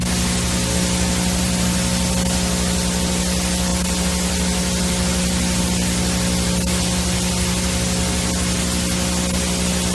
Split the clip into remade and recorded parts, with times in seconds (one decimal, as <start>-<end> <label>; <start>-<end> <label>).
0.0-9.9 recorded